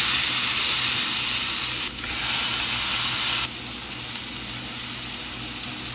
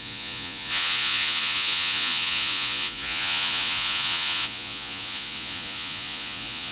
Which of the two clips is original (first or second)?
first